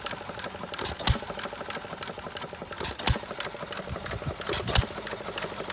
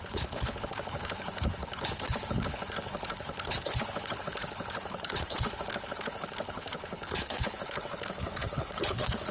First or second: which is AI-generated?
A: second